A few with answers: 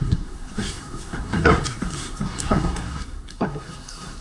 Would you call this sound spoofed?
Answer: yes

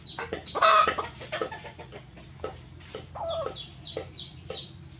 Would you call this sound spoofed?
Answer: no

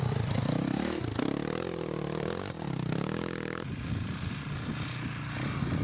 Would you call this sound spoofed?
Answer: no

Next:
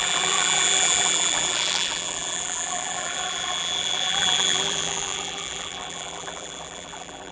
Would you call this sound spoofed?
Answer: yes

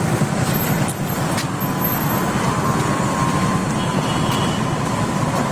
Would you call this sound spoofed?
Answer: no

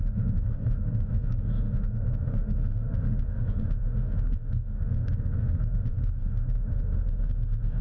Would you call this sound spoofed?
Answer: yes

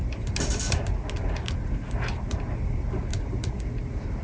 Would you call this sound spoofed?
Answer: no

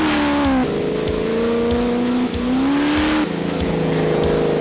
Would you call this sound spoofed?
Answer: no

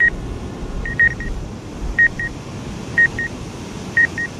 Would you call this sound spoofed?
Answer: yes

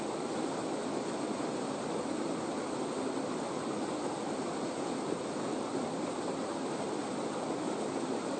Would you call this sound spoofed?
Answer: no